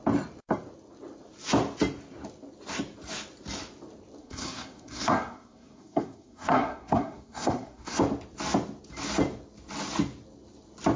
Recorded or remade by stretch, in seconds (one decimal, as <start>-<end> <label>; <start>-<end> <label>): 0.0-4.2 recorded; 4.2-8.0 remade; 8.0-11.0 recorded